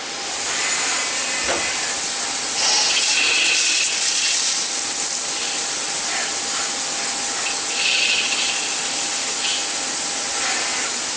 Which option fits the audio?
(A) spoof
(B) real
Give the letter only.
B